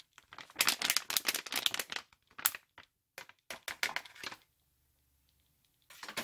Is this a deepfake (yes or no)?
no